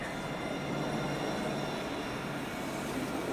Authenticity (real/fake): real